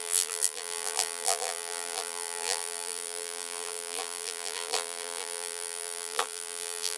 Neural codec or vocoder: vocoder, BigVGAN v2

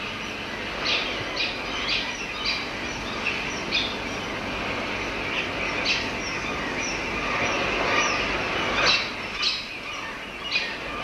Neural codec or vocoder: none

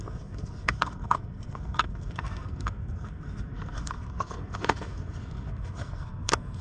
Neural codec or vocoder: codec, SNAC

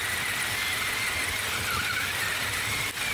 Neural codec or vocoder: none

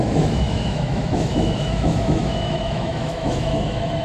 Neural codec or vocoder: autoencoder, DAC-VAE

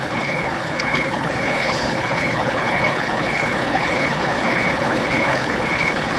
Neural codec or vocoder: codec, HILCodec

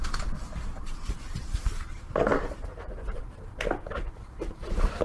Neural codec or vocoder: vocoder, BigVGAN v2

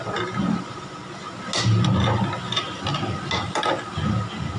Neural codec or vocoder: none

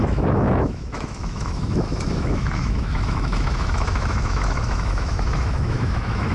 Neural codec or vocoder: autoencoder, DAC-VAE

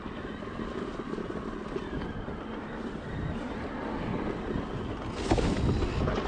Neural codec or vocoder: none